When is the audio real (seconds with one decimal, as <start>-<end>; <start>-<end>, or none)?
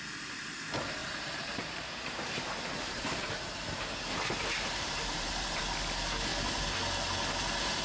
0.0-1.0; 5.6-7.8